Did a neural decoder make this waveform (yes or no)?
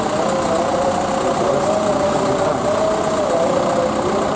no